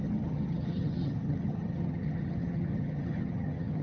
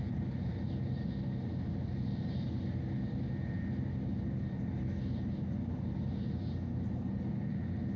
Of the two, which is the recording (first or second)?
second